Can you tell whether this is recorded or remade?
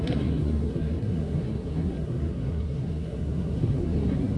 remade